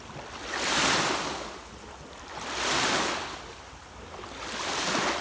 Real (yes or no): yes